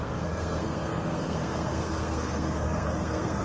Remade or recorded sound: remade